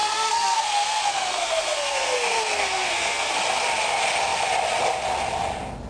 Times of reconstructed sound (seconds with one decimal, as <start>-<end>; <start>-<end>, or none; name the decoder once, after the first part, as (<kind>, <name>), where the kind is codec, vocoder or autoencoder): 0.0-3.3 (codec, SNAC)